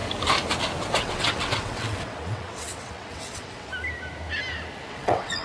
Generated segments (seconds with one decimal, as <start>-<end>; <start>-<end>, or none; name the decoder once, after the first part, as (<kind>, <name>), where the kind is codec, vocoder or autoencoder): 1.0-3.7 (vocoder, WaveNeXt); 4.9-5.4